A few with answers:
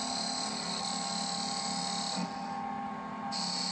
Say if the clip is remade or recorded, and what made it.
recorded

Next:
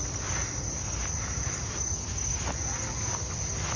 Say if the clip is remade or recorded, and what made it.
recorded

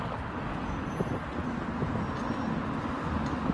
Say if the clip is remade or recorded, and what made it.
recorded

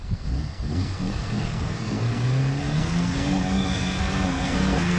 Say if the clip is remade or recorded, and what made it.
remade, codec, SNAC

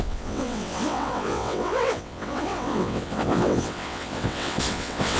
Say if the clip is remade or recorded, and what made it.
remade, vocoder, WaveNeXt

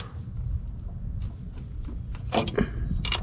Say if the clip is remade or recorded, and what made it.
recorded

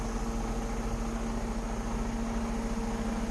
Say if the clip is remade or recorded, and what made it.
recorded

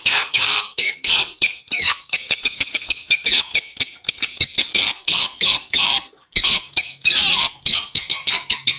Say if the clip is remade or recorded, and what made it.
remade, codec, SNAC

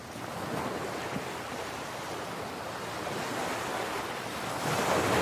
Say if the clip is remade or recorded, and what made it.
recorded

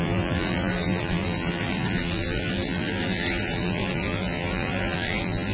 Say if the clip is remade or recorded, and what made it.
remade, vocoder, BigVGAN v2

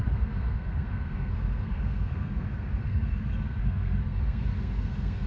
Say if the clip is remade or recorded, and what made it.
remade, codec, SNAC